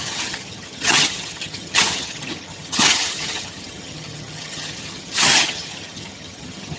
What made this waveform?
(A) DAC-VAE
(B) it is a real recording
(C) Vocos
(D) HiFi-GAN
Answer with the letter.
D